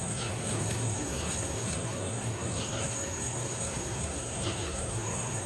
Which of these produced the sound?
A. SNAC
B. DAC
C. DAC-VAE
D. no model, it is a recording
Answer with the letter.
A